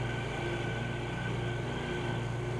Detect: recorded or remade recorded